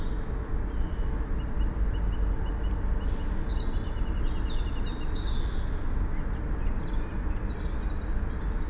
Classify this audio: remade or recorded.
recorded